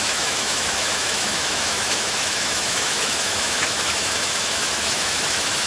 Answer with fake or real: fake